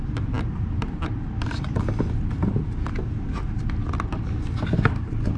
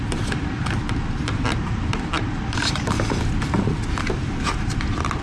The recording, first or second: first